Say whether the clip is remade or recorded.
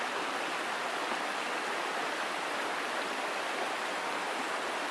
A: recorded